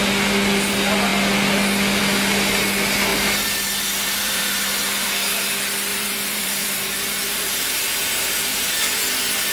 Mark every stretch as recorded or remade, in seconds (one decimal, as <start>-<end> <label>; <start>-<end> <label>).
0.0-3.1 recorded; 3.1-4.4 remade; 4.4-5.9 recorded; 5.9-8.7 remade; 8.7-9.5 recorded

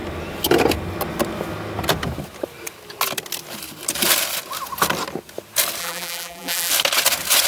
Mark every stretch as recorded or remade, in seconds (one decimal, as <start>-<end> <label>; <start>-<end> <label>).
0.0-5.8 recorded; 5.8-6.7 remade; 6.7-7.5 recorded

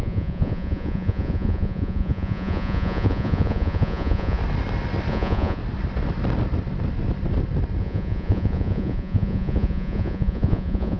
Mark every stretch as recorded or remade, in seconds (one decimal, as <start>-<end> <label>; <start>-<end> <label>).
0.0-4.4 remade; 4.4-5.1 recorded; 5.1-5.6 remade; 5.6-7.8 recorded; 7.8-11.0 remade

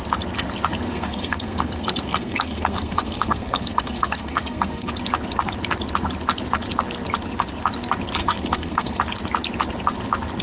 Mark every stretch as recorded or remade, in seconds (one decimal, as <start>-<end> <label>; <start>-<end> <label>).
0.0-0.9 recorded; 0.9-4.9 remade; 4.9-8.2 recorded; 8.2-9.0 remade; 9.0-10.4 recorded

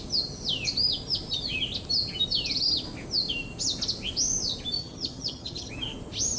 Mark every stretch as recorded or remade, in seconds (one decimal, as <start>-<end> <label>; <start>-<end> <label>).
0.0-4.8 recorded; 4.8-5.7 remade; 5.7-6.4 recorded